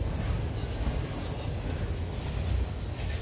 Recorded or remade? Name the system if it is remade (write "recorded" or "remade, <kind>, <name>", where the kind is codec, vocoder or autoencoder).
recorded